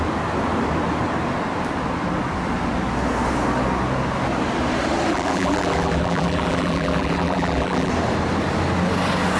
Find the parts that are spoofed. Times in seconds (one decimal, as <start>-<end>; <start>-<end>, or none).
5.1-7.9